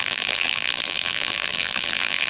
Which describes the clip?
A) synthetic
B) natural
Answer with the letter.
A